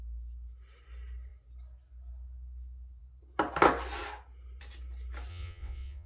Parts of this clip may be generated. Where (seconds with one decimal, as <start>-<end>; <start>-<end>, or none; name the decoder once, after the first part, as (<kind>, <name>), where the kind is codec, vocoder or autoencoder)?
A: 5.3-6.1 (vocoder, WaveNeXt)